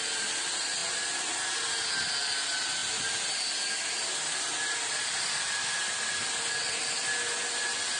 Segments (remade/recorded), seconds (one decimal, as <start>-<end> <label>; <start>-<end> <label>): 0.0-8.0 recorded